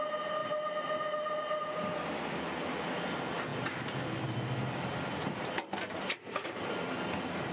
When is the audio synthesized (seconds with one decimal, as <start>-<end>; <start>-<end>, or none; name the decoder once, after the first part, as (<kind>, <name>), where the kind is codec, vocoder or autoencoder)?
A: none